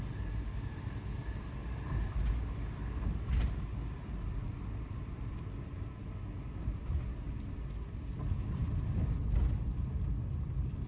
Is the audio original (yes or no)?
yes